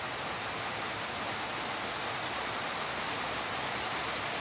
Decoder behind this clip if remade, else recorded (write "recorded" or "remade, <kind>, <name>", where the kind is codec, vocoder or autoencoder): recorded